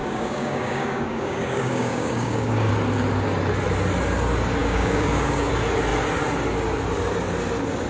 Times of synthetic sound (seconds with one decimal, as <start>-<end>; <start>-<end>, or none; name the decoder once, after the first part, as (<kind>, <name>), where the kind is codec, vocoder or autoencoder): 0.0-2.7 (codec, DAC); 4.6-5.5